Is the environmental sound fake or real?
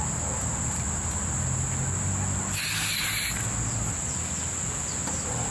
real